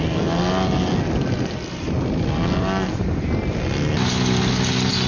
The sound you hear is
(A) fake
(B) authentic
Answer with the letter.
B